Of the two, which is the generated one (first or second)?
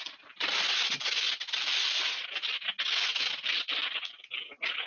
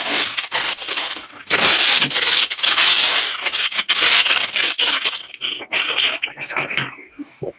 second